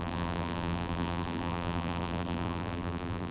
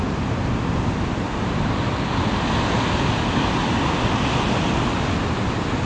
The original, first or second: second